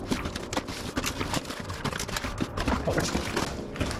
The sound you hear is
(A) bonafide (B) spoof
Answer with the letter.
A